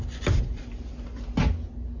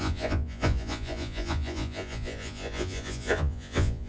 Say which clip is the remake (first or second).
second